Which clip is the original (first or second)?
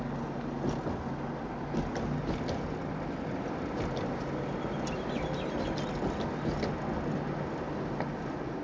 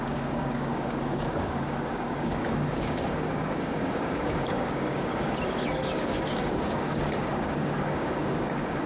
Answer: first